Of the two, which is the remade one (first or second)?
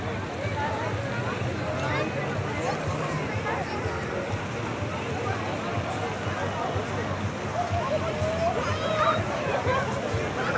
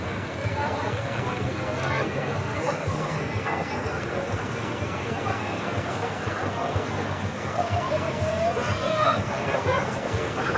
second